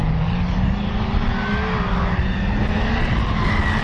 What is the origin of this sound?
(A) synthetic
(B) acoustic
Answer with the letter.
B